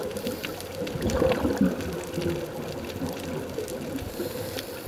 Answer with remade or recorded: recorded